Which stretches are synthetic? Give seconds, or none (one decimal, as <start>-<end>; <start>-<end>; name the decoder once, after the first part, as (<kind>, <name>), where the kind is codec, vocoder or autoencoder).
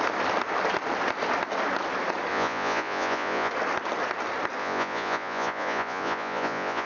2.3-3.5 (vocoder, Vocos); 4.6-6.9